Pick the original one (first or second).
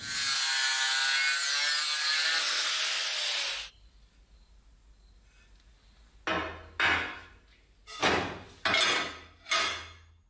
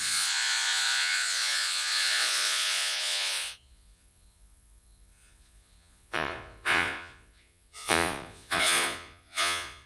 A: first